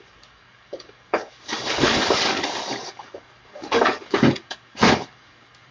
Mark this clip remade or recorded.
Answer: remade